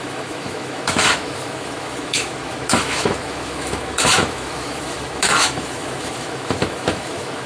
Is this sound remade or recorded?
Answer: remade